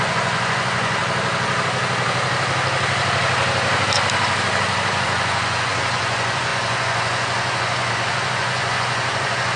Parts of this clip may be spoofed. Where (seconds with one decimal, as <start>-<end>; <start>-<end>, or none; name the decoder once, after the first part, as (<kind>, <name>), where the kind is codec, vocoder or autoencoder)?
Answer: 0.0-1.0 (vocoder, Vocos); 4.9-9.6